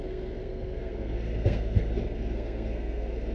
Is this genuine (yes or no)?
no